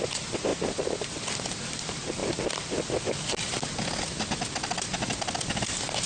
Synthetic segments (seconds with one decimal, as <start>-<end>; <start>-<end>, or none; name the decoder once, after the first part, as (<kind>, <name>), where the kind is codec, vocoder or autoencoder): none